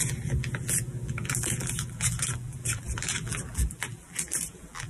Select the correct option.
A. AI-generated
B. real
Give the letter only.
A